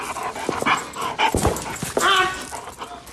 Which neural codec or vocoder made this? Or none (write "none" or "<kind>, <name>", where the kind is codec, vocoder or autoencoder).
none